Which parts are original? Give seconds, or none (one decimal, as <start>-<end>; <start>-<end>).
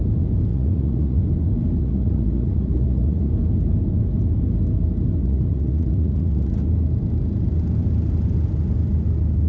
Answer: 0.0-0.5; 1.2-1.8; 3.3-5.2; 6.6-9.5